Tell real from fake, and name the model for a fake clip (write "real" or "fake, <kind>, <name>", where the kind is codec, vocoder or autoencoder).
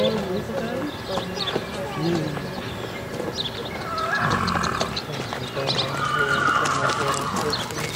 real